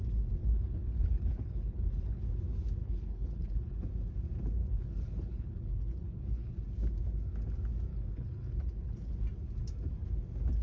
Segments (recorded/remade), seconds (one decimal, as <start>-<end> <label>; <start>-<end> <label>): 0.0-0.4 recorded; 0.4-2.2 remade; 2.2-2.8 recorded; 2.8-3.8 remade; 3.8-4.6 recorded; 4.6-6.5 remade; 6.5-7.9 recorded; 7.9-9.2 remade; 9.2-10.6 recorded